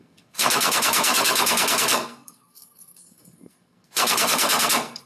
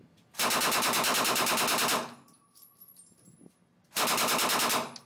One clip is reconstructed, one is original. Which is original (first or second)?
second